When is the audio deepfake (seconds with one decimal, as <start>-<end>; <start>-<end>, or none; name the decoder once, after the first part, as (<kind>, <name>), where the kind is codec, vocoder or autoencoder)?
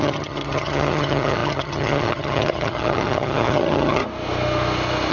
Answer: 0.0-4.0 (vocoder, HiFi-GAN)